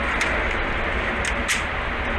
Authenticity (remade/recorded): recorded